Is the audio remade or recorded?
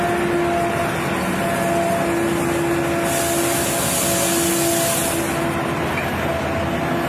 recorded